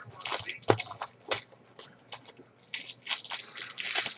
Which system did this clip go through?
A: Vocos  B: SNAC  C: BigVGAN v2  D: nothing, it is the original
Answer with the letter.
D